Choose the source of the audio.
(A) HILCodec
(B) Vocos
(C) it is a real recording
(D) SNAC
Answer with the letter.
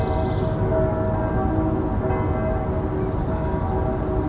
C